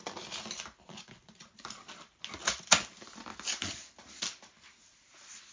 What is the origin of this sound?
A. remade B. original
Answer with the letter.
B